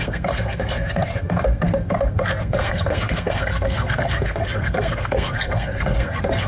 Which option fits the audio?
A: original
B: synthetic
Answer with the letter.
B